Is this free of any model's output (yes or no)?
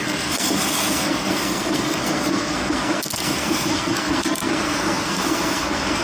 no